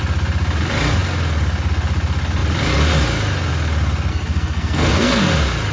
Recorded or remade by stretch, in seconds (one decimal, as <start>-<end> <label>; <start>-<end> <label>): 0.0-4.1 recorded; 4.1-5.2 remade; 5.2-5.7 recorded